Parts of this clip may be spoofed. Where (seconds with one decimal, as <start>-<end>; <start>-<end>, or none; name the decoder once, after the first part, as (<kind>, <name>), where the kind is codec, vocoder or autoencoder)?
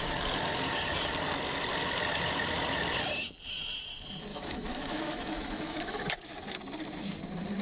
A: 4.3-6.0 (autoencoder, DAC-VAE)